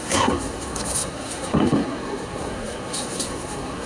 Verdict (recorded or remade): remade